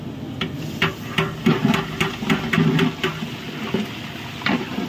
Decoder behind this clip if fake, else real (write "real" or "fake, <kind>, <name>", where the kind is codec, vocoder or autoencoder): real